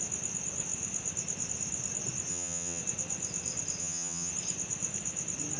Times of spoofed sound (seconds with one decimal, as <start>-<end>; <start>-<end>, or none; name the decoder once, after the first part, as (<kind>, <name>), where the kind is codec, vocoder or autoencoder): 2.3-2.8 (vocoder, HiFi-GAN); 3.8-4.3